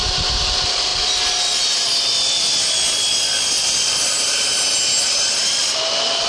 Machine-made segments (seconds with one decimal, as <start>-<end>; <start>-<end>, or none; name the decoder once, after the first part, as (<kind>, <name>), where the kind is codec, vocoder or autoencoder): none